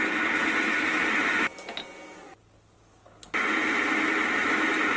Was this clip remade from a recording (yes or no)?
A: no